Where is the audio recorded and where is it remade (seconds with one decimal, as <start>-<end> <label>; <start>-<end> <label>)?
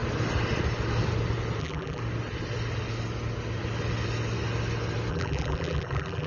0.0-1.6 recorded; 1.6-2.0 remade; 2.0-5.1 recorded; 5.1-6.3 remade